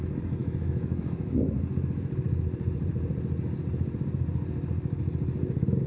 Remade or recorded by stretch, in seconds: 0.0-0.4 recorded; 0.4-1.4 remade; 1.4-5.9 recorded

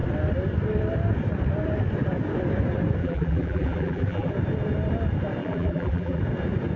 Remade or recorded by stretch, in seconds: 0.0-3.0 recorded; 3.0-4.3 remade; 4.3-5.4 recorded; 5.4-6.2 remade; 6.2-6.8 recorded

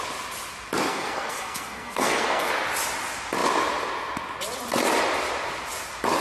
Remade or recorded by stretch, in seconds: 0.0-0.9 recorded; 0.9-2.5 remade; 2.5-6.2 recorded

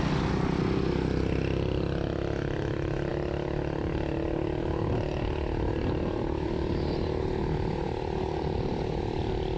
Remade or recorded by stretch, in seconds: 0.0-9.6 recorded

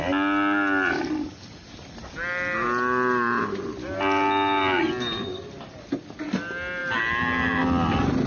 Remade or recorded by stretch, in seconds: 0.0-8.3 recorded

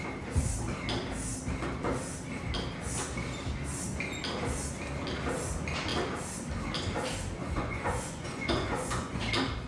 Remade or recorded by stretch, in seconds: 0.0-7.4 recorded; 7.4-9.2 remade; 9.2-9.7 recorded

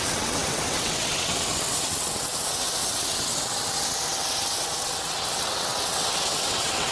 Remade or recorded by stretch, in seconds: 0.0-6.9 remade

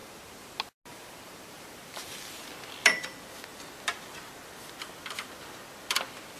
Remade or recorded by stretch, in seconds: 0.0-0.5 remade; 0.5-0.9 recorded; 0.9-2.5 remade; 2.5-6.4 recorded